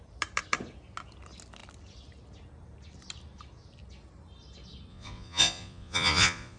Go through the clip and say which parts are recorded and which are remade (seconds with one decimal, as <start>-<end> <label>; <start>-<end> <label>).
0.0-4.9 recorded; 4.9-6.6 remade